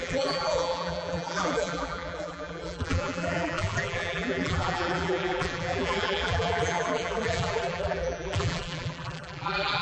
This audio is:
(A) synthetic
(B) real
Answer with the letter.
A